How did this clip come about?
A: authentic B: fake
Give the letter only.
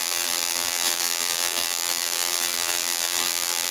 B